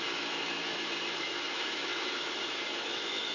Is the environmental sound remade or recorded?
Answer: remade